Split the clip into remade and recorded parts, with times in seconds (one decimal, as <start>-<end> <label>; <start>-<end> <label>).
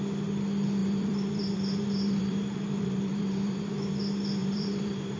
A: 0.0-0.8 recorded; 0.8-3.9 remade; 3.9-4.4 recorded; 4.4-5.2 remade